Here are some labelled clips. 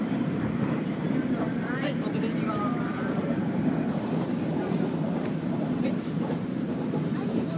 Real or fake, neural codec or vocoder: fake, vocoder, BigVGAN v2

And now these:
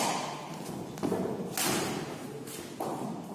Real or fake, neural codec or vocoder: real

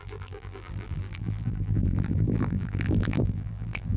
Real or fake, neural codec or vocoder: fake, vocoder, BigVGAN v2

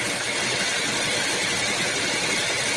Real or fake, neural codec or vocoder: real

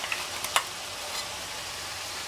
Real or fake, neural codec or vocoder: real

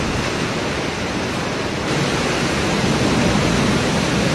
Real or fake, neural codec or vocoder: real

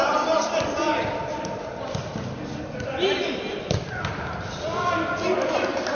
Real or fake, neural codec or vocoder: fake, vocoder, BigVGAN v2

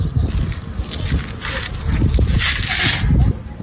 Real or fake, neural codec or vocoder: real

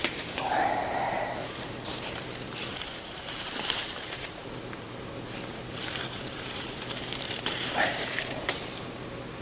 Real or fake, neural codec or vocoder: fake, vocoder, BigVGAN v2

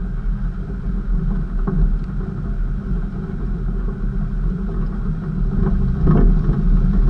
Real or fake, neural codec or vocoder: real